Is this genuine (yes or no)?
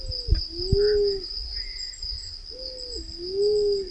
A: yes